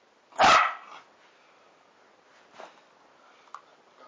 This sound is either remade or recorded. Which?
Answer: recorded